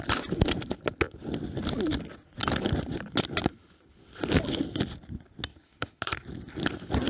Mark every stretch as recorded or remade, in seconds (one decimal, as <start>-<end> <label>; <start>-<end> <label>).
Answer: 0.0-5.5 recorded; 5.5-6.0 remade; 6.0-7.1 recorded